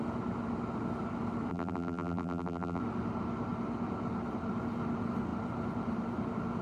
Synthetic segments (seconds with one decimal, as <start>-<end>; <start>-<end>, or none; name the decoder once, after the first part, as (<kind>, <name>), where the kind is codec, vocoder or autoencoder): 1.5-2.8 (vocoder, BigVGAN v2)